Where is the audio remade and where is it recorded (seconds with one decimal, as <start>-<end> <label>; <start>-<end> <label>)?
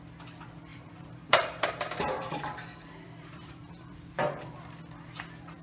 0.0-0.7 recorded; 0.7-4.1 remade; 4.1-5.6 recorded